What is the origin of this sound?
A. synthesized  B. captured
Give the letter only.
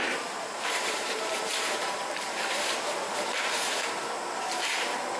A